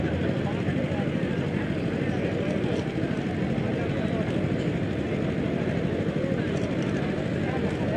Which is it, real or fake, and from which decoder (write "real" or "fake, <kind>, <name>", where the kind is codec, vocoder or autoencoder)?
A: real